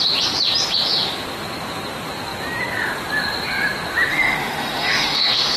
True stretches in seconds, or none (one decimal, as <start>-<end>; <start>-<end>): 0.0-4.1